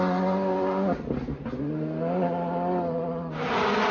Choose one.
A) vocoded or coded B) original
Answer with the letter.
B